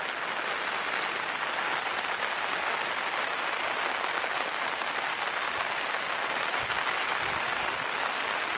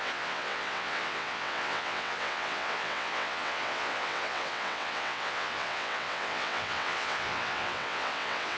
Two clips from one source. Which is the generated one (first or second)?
second